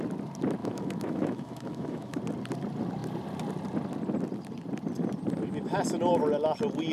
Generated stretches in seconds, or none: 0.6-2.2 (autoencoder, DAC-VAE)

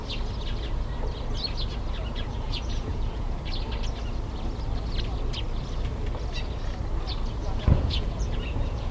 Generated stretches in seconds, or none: 2.0-3.4 (vocoder, Vocos); 7.4-8.9

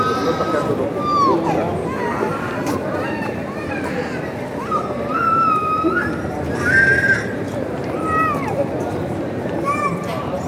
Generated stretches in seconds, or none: 2.3-4.0 (vocoder, BigVGAN v2); 5.1-9.9

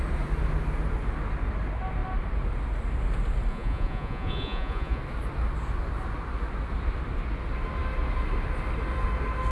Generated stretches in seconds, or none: 3.5-5.0 (vocoder, Vocos)

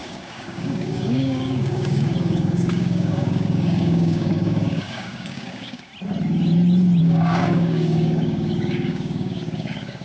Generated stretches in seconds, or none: 0.0-5.9 (codec, DAC); 7.0-10.0

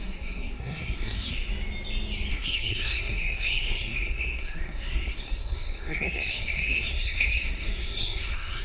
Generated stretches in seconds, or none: 0.0-1.5 (codec, SNAC); 2.3-8.6

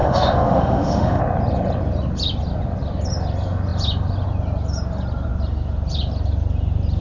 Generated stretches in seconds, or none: 0.0-1.2 (autoencoder, DAC-VAE)

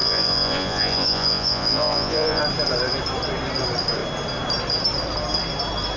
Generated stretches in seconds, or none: 0.0-2.4 (vocoder, Vocos)